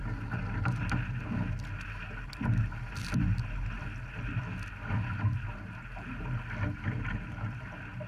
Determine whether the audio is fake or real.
real